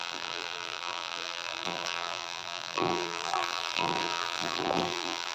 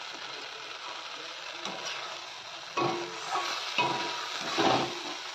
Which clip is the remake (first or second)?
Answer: first